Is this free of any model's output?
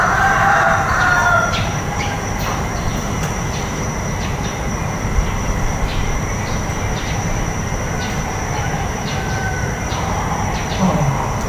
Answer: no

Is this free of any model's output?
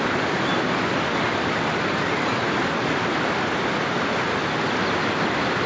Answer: yes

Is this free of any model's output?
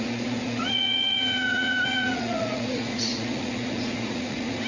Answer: no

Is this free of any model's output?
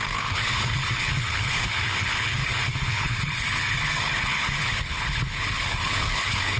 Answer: no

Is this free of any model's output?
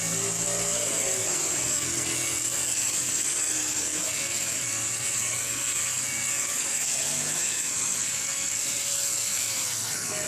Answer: no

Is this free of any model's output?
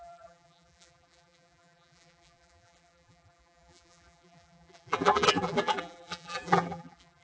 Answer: no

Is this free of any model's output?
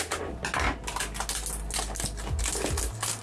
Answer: yes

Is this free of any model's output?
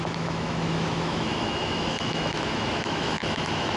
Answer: no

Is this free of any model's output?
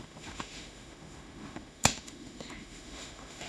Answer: no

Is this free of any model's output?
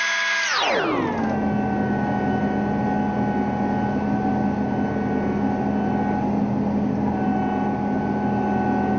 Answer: yes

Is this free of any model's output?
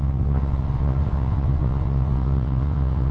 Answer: no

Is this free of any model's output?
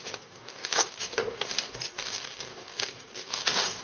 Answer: no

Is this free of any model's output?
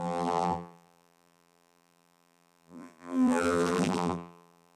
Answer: no